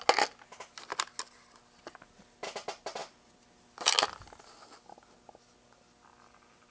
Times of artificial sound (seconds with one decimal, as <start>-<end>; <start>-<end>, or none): none